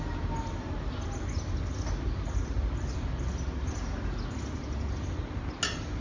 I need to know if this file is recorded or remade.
recorded